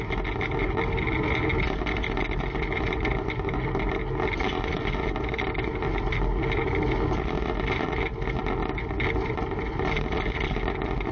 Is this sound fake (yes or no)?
no